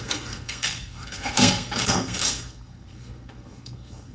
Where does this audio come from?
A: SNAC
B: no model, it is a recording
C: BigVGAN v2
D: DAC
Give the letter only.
A